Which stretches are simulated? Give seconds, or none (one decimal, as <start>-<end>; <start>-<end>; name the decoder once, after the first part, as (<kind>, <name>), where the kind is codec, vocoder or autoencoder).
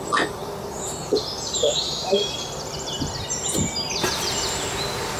0.4-1.2 (vocoder, BigVGAN v2); 1.6-3.7